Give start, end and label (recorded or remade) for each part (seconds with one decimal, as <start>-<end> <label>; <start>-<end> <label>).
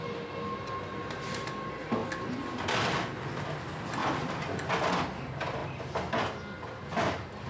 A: 0.0-7.5 recorded